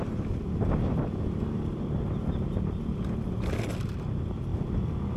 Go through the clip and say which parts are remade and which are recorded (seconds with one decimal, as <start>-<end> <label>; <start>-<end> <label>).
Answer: 0.0-5.2 recorded